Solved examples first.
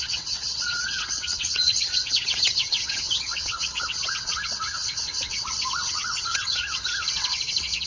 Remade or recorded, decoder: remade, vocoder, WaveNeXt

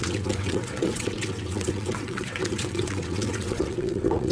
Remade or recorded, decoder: remade, vocoder, WaveNeXt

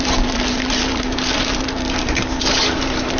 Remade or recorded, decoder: remade, vocoder, BigVGAN v2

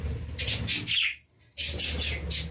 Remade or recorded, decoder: recorded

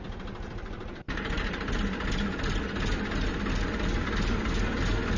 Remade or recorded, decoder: recorded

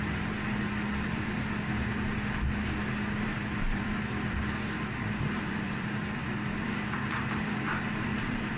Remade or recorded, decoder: remade, vocoder, BigVGAN v2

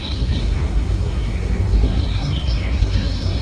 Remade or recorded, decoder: remade, codec, SNAC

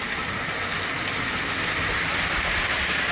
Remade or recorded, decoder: recorded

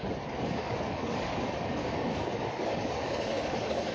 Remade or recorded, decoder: remade, codec, DAC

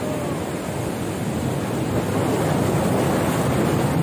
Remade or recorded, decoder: recorded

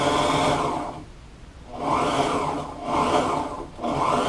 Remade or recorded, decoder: recorded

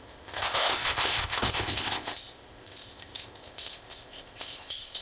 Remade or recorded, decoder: remade, codec, ZipCodec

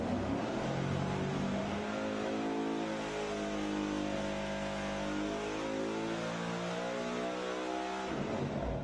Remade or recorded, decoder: recorded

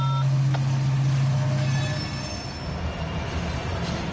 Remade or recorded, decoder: recorded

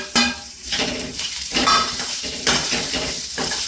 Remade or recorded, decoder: remade, vocoder, BigVGAN v2